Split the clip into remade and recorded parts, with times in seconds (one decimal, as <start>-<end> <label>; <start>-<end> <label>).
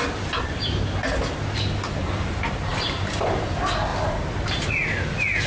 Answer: 0.0-2.7 recorded; 2.7-3.4 remade; 3.4-3.9 recorded; 3.9-4.7 remade; 4.7-5.5 recorded